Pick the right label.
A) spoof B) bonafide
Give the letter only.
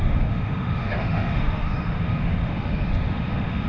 A